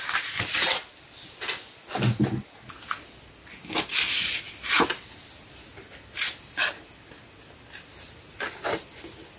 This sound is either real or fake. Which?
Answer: real